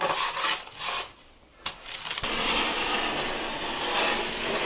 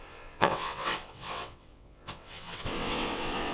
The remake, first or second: second